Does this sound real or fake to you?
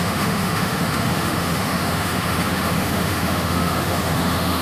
fake